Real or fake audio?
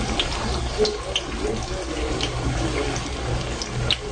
real